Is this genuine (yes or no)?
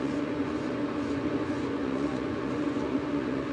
no